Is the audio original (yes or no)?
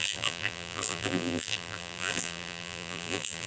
no